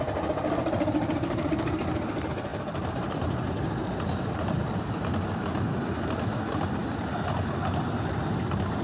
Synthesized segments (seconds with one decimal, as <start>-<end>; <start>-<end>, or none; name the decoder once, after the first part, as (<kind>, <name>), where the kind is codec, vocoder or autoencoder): none